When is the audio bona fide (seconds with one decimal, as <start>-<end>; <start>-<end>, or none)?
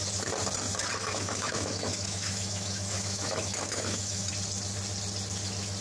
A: 0.0-1.0; 4.3-5.8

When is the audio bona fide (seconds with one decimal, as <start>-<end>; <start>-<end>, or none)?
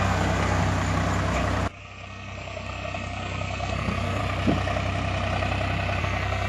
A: 0.6-1.8; 4.2-6.0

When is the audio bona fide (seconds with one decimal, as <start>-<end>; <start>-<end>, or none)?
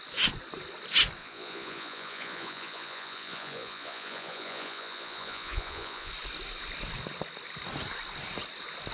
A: 0.0-1.2; 6.1-8.9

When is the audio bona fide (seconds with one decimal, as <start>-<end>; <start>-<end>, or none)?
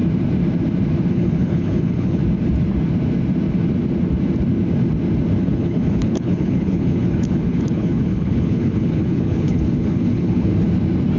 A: 0.0-1.1; 2.2-5.4; 10.5-11.2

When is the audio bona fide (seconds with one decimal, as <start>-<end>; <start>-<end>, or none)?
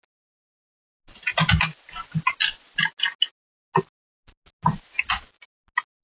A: 0.0-6.0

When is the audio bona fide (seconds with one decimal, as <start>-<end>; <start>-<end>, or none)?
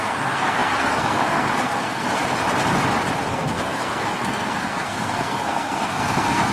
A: 2.2-3.3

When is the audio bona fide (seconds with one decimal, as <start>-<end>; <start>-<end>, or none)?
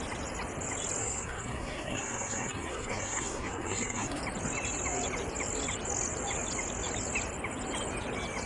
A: 0.0-1.0; 4.2-8.5